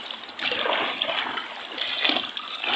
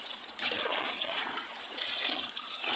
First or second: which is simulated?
second